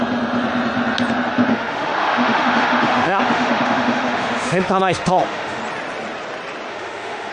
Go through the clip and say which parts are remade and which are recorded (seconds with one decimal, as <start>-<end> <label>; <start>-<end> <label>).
0.0-1.5 recorded; 1.5-5.6 remade; 5.6-6.7 recorded; 6.7-7.3 remade